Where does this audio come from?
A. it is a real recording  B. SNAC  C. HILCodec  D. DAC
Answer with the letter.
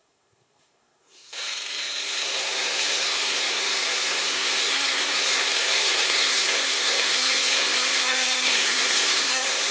B